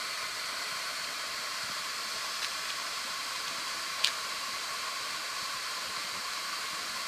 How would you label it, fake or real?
fake